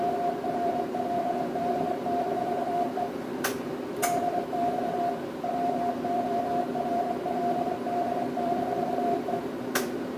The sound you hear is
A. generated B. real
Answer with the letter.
A